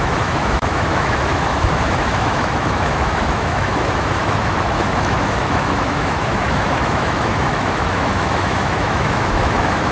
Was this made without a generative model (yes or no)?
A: no